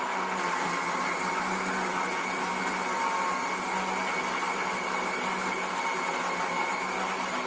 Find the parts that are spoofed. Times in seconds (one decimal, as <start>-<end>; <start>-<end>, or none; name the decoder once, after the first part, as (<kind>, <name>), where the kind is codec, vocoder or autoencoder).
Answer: none